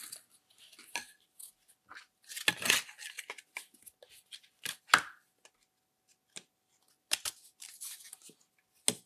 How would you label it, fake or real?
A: real